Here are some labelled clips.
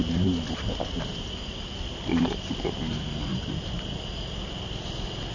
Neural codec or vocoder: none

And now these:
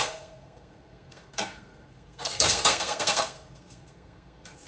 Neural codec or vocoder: codec, SNAC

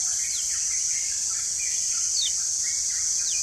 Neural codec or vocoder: none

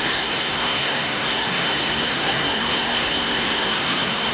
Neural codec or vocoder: codec, SNAC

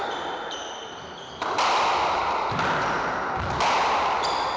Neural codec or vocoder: none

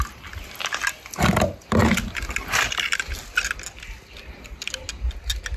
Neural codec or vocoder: none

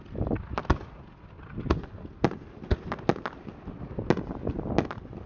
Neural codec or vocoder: none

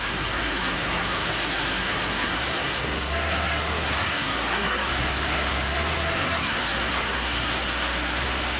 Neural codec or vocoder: codec, SNAC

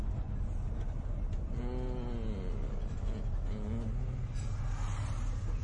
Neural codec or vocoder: none